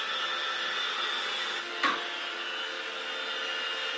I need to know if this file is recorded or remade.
recorded